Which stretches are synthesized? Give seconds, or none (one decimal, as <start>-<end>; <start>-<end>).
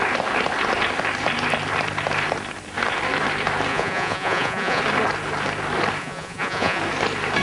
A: 3.7-4.8; 6.0-6.8